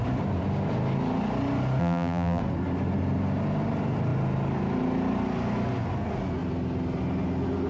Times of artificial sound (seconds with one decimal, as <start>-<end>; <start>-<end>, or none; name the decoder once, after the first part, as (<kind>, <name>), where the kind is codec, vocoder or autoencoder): 1.8-2.4 (vocoder, BigVGAN v2)